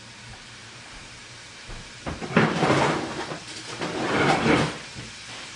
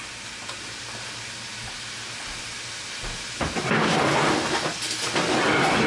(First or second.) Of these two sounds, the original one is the second